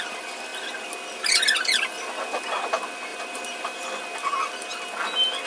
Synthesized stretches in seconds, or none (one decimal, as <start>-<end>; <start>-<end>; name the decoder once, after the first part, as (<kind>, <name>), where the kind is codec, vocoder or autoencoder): 3.1-3.8 (vocoder, BigVGAN v2)

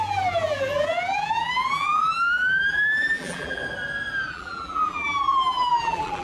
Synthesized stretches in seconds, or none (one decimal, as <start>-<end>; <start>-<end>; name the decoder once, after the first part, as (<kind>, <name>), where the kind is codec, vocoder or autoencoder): 0.0-3.6 (vocoder, BigVGAN v2); 4.3-6.2

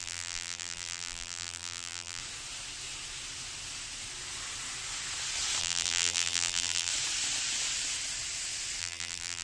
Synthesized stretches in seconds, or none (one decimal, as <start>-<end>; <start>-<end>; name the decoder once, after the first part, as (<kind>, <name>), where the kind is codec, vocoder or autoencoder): 0.0-2.2 (vocoder, BigVGAN v2); 5.6-6.9; 8.8-9.4

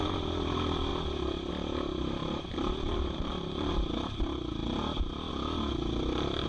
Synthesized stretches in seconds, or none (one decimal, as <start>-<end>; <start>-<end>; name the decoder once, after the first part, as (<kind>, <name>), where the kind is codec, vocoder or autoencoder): 2.2-3.7 (vocoder, BigVGAN v2)